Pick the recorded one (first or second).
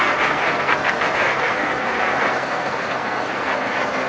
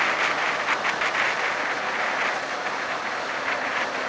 second